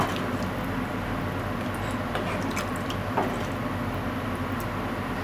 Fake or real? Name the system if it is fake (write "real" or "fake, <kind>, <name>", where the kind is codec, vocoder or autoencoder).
real